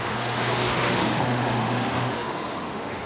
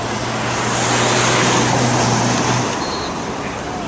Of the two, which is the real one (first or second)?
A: second